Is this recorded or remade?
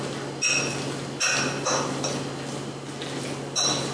recorded